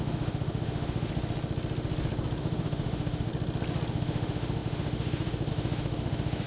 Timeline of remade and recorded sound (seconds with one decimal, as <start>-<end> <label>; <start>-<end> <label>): 0.0-1.1 remade; 1.1-2.4 recorded; 2.4-3.3 remade; 3.3-3.9 recorded; 3.9-6.5 remade